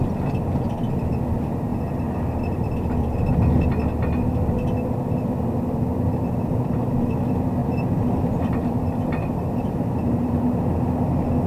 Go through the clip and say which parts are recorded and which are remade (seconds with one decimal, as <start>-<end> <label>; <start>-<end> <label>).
0.0-7.6 recorded; 7.6-10.7 remade; 10.7-11.5 recorded